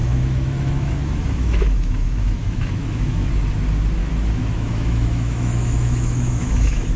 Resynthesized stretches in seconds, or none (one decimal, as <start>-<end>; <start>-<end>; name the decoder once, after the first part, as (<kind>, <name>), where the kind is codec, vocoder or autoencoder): 0.0-3.3 (autoencoder, DAC-VAE); 4.0-7.0

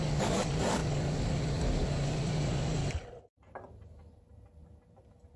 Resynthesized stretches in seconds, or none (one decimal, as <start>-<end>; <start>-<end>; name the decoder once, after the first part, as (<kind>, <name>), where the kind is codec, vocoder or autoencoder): 0.0-2.8 (codec, DAC)

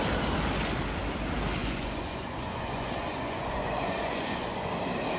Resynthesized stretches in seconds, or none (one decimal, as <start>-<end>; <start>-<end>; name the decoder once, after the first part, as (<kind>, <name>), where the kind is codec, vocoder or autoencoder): 1.6-4.7 (vocoder, Vocos)

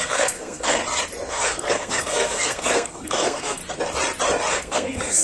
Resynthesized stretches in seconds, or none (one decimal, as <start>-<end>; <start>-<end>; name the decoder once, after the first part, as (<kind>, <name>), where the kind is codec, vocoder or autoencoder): 0.0-0.8 (codec, SNAC); 1.3-3.6; 4.5-5.2

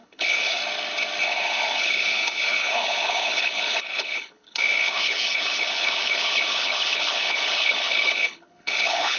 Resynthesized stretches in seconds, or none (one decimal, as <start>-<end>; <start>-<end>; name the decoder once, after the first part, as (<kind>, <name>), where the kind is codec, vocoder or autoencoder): 0.0-0.6 (codec, HILCodec); 1.3-9.2